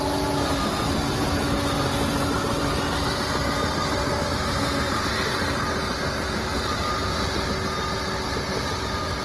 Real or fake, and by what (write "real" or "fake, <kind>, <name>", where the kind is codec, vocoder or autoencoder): real